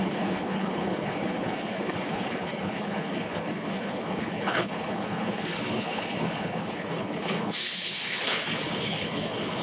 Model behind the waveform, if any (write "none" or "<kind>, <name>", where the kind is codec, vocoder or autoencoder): codec, HILCodec